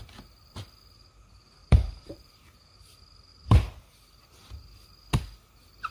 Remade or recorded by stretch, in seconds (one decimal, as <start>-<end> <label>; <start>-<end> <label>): 0.0-1.6 recorded; 1.6-2.7 remade; 2.7-3.3 recorded; 3.3-4.0 remade; 4.0-5.9 recorded